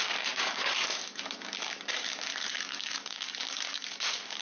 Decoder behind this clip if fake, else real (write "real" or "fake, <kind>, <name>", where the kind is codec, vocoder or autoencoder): fake, codec, DAC